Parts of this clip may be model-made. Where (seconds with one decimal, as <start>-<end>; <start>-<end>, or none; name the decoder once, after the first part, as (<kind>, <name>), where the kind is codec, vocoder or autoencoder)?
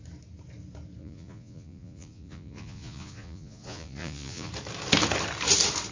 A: 1.0-4.5 (vocoder, Vocos)